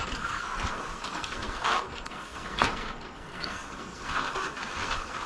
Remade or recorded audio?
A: remade